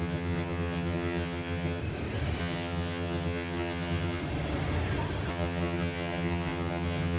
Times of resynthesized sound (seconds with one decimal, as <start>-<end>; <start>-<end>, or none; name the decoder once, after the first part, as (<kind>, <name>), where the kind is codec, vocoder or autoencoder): 0.0-1.8 (vocoder, HiFi-GAN); 2.4-4.2; 5.3-7.2

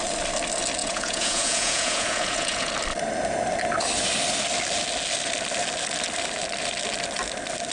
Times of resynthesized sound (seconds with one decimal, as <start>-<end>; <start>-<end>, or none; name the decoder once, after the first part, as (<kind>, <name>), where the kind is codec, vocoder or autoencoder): 0.8-2.7 (vocoder, Vocos)

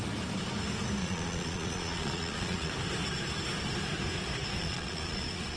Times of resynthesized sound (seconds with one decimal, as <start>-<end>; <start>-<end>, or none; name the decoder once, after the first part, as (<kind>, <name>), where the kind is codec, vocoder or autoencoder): 1.0-2.7 (vocoder, Vocos); 4.6-5.6